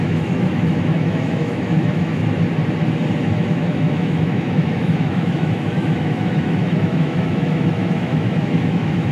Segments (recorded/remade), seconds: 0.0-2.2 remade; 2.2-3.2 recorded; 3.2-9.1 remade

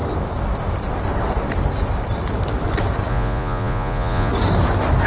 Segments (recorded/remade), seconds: 0.0-3.1 recorded; 3.1-4.3 remade; 4.3-5.1 recorded